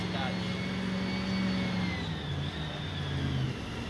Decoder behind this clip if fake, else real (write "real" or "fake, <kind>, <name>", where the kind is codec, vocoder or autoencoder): real